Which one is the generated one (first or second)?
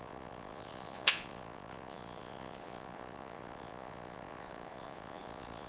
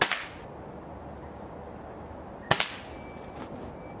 first